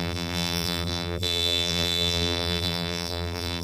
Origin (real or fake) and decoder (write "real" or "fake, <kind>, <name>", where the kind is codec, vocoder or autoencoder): fake, vocoder, BigVGAN v2